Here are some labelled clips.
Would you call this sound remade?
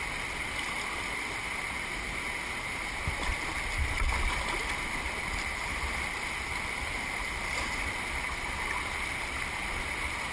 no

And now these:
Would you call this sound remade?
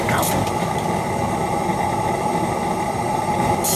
no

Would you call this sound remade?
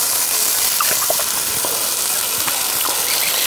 no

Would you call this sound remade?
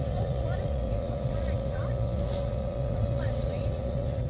yes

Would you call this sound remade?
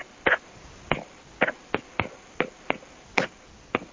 no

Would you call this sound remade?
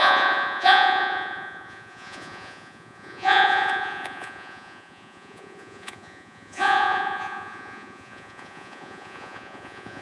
yes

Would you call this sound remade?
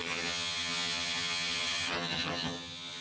yes